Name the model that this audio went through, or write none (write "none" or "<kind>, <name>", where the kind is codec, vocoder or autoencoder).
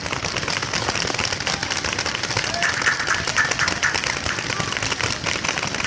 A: none